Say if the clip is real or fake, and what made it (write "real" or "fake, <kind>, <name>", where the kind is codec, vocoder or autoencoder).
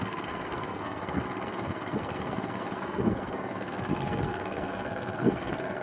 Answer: fake, codec, SNAC